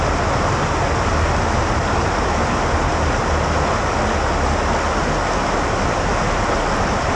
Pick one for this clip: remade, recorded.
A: recorded